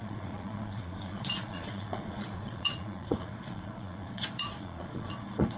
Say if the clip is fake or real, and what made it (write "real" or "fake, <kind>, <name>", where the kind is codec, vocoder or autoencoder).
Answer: fake, vocoder, Vocos